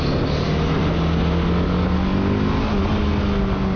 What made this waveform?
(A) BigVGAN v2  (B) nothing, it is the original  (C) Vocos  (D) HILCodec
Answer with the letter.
B